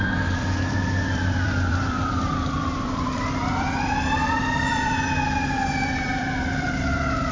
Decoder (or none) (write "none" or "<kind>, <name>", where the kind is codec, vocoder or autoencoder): vocoder, BigVGAN v2